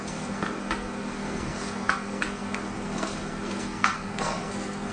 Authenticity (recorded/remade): remade